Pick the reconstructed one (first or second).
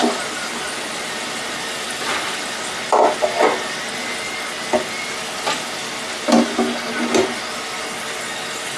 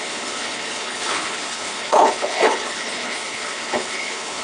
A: second